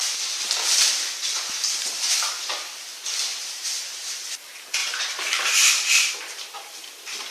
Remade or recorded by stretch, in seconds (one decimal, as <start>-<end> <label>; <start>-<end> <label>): 0.0-3.3 recorded; 3.3-4.2 remade; 4.2-4.8 recorded; 4.8-5.7 remade; 5.7-7.3 recorded